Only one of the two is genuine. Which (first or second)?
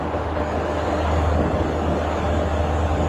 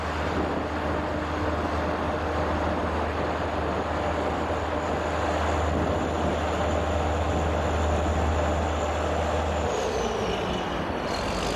second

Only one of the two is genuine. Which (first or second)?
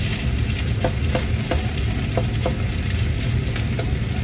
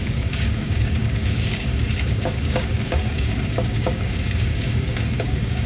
first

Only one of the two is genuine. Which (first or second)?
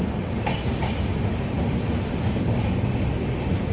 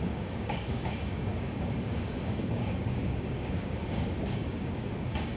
first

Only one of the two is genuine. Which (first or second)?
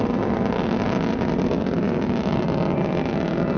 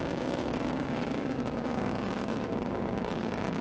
first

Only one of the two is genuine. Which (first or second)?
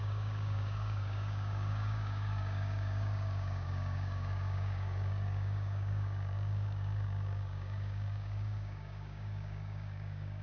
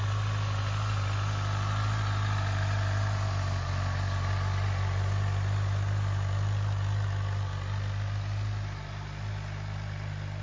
second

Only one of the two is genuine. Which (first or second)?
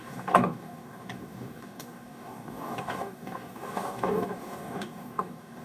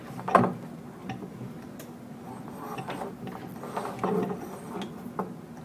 second